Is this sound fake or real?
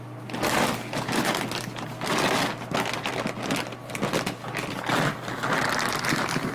real